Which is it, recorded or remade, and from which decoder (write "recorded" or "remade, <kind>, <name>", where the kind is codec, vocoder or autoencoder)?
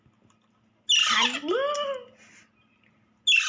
recorded